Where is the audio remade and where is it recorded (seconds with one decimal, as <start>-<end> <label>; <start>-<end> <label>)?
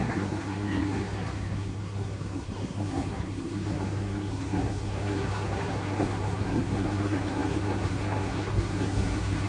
0.0-9.5 remade